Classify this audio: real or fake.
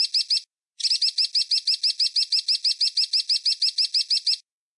real